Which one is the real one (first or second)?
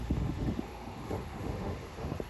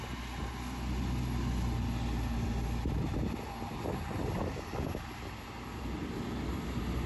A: second